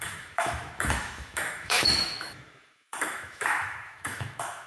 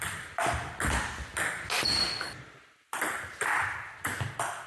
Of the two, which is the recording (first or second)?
second